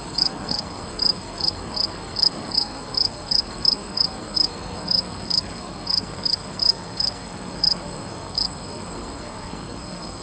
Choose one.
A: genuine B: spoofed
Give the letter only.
B